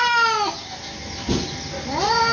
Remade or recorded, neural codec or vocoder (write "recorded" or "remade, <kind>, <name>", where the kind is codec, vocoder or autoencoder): recorded